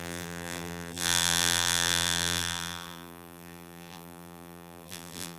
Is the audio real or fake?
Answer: fake